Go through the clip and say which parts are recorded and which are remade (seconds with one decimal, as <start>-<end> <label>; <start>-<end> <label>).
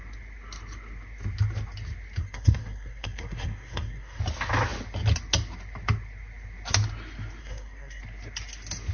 0.0-2.2 recorded; 2.2-4.2 remade; 4.2-7.4 recorded; 7.4-8.0 remade; 8.0-8.9 recorded